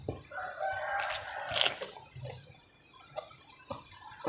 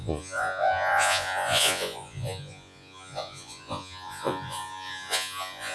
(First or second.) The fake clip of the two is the second